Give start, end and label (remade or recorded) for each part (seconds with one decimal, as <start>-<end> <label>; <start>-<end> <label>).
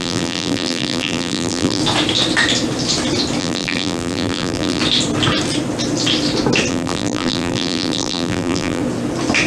0.0-1.8 remade; 1.8-3.4 recorded; 3.4-4.8 remade; 4.8-6.7 recorded; 6.7-8.8 remade; 8.8-9.5 recorded